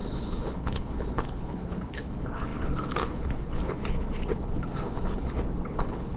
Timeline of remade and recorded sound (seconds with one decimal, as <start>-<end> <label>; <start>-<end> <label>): 0.0-6.2 remade